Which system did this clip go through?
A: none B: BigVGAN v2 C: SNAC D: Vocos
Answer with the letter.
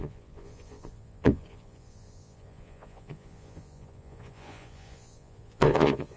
D